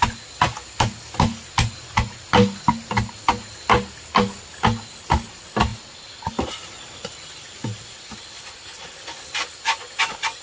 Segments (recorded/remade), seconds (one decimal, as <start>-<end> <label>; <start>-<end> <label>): 0.0-10.4 recorded